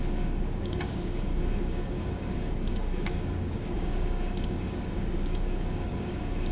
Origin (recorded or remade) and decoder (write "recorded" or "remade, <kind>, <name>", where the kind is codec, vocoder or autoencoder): remade, codec, DAC